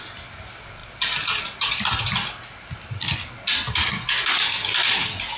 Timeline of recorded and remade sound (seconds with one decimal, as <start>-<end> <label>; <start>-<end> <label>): 0.0-5.4 recorded